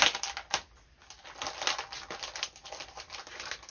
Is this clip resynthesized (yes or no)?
no